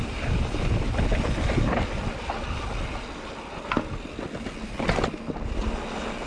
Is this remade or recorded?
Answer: recorded